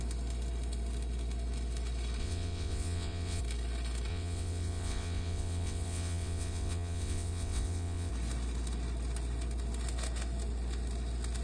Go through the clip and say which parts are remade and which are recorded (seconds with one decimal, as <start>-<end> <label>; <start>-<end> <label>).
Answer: 0.0-2.2 recorded; 2.2-3.4 remade; 3.4-4.1 recorded; 4.1-8.1 remade; 8.1-11.4 recorded